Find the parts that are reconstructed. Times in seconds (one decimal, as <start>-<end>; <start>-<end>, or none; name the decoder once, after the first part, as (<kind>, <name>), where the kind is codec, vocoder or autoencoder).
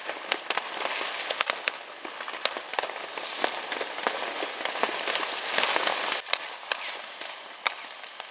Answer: none